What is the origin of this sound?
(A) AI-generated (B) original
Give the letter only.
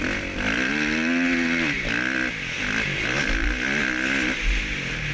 B